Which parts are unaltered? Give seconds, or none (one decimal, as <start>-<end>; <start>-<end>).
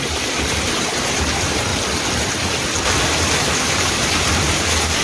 1.7-3.6